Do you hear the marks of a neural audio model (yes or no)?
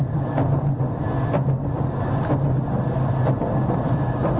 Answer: yes